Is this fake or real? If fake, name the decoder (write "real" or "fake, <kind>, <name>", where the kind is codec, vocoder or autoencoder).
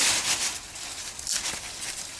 real